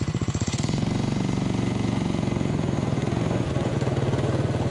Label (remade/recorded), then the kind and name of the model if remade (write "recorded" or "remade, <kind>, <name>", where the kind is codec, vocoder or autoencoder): remade, vocoder, Vocos